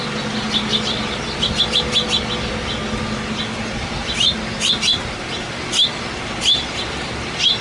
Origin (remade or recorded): recorded